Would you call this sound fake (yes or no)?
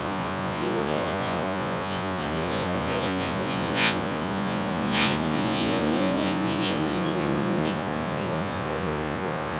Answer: yes